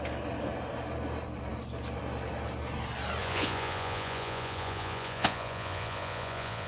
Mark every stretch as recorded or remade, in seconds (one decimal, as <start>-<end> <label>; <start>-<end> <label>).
0.0-3.2 recorded; 3.2-6.7 remade

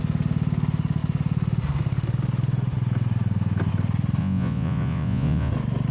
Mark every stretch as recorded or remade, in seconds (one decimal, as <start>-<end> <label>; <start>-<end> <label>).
0.0-4.2 recorded; 4.2-5.5 remade; 5.5-5.9 recorded

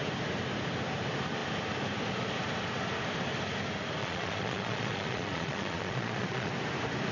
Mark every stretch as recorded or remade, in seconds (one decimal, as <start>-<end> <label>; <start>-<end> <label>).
0.0-4.0 recorded; 4.0-6.5 remade; 6.5-7.1 recorded

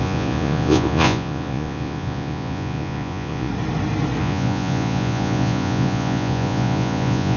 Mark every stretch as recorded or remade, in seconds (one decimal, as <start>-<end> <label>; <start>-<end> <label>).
0.0-3.5 remade; 3.5-4.2 recorded; 4.2-7.4 remade

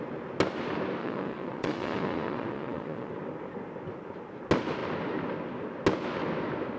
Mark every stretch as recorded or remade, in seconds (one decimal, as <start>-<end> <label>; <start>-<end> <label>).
0.0-1.0 recorded; 1.0-3.1 remade; 3.1-6.8 recorded

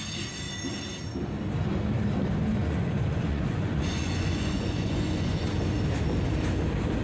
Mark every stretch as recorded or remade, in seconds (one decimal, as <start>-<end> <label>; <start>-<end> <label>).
0.0-2.6 recorded; 2.6-5.5 remade; 5.5-7.0 recorded

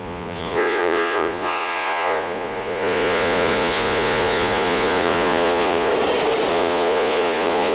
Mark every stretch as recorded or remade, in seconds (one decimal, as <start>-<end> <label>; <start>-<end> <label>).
0.0-5.9 remade; 5.9-6.5 recorded; 6.5-7.7 remade